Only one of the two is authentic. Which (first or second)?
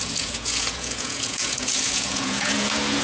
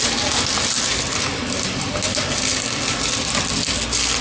second